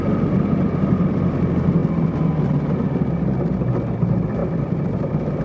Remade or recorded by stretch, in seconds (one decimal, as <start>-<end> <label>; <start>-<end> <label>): 0.0-5.4 recorded